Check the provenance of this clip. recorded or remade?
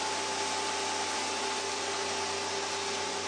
recorded